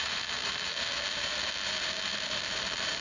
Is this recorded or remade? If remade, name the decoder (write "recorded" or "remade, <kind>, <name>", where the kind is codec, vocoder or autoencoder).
remade, vocoder, BigVGAN v2